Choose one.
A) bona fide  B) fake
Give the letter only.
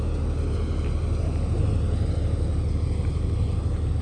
A